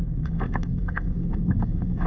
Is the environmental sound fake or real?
fake